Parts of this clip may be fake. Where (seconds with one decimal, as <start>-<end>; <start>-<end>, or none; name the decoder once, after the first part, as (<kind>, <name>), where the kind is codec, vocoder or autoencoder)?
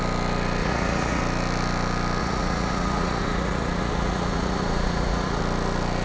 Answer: 0.6-1.2 (vocoder, Vocos); 2.2-5.4